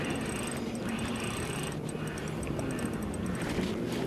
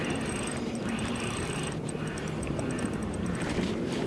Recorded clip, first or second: first